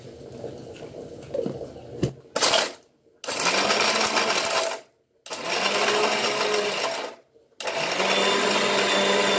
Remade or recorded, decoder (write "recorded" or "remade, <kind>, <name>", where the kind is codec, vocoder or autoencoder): recorded